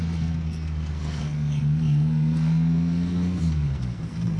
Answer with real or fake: fake